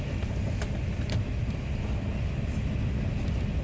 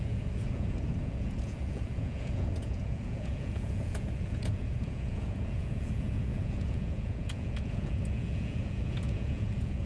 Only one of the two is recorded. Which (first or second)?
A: first